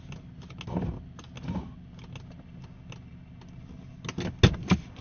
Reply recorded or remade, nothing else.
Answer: recorded